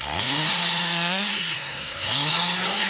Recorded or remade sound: remade